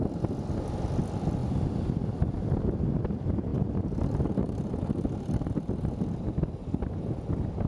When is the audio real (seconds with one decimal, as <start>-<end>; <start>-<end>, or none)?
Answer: 0.0-3.5; 4.7-7.7